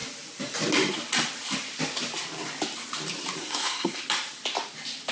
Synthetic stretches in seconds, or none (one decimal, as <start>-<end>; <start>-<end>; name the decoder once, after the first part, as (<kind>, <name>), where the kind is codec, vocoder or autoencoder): 3.4-4.0 (codec, SNAC)